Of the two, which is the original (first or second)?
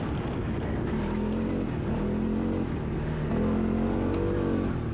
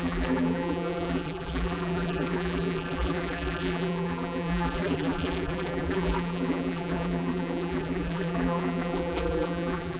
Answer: first